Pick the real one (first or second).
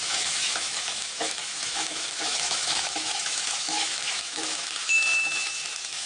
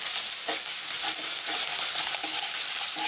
second